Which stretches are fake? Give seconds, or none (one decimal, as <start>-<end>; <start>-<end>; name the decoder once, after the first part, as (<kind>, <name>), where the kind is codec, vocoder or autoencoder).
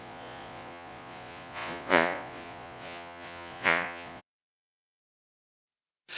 0.0-5.0 (vocoder, Vocos)